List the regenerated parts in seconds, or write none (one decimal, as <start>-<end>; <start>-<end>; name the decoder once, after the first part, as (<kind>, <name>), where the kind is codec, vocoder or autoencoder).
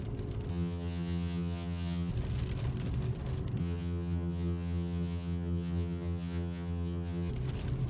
0.5-2.1 (vocoder, HiFi-GAN); 3.6-7.3